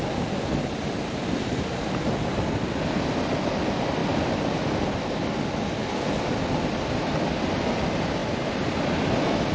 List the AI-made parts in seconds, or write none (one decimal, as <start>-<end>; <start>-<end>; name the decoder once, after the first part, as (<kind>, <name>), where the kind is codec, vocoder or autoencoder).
none